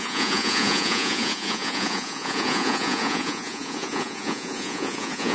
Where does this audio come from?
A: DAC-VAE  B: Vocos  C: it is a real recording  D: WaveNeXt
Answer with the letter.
B